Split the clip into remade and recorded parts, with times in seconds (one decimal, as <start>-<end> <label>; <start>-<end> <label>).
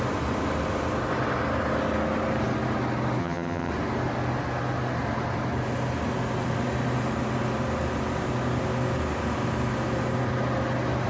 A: 0.0-3.2 recorded; 3.2-3.7 remade; 3.7-11.1 recorded